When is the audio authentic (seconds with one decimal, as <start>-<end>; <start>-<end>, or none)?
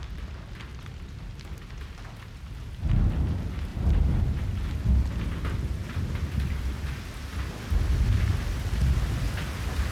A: 0.0-0.7; 1.4-3.7; 4.4-9.9